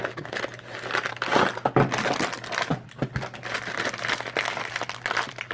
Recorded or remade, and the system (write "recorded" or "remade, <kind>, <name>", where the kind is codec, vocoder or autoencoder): recorded